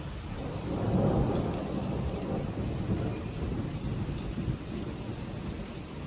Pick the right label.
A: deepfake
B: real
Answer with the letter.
A